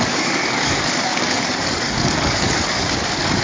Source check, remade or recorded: remade